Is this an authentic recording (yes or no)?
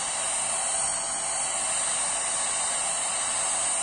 yes